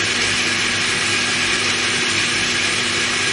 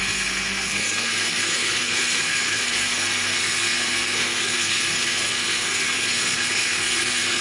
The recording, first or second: first